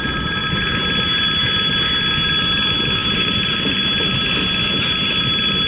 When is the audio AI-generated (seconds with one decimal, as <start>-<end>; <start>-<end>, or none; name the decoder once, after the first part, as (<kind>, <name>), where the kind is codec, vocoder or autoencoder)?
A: 3.0-3.8 (vocoder, BigVGAN v2)